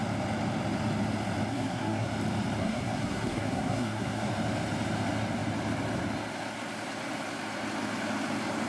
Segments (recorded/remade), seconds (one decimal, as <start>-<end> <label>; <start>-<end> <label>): 0.0-1.5 recorded; 1.5-2.1 remade; 2.1-2.6 recorded; 2.6-4.3 remade; 4.3-8.7 recorded